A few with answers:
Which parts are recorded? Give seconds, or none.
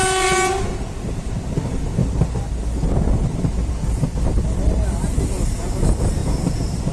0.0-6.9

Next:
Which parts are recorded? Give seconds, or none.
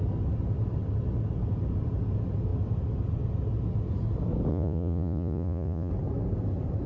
0.0-4.5; 5.9-6.9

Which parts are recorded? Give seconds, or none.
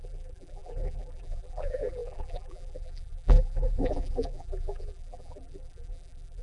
none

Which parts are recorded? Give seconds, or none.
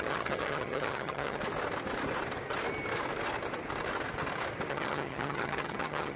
1.4-4.7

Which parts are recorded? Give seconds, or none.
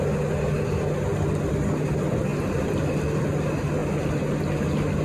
0.0-5.0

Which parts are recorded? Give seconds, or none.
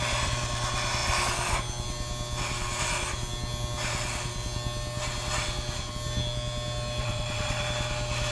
0.0-7.0; 7.6-8.3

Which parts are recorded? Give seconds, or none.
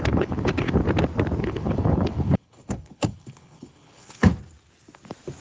0.8-1.4; 4.3-5.4